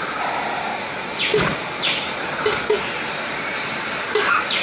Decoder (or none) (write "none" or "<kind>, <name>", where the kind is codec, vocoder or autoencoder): none